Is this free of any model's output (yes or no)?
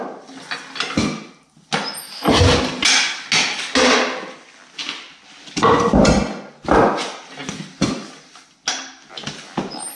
yes